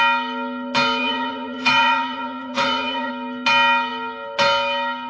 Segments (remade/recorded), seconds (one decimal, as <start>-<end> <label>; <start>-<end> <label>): 0.0-1.0 recorded; 1.0-3.1 remade; 3.1-5.1 recorded